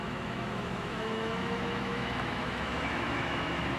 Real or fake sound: fake